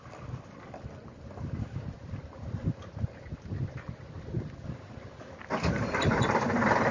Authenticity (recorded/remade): recorded